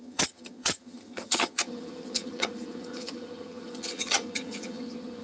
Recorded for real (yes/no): no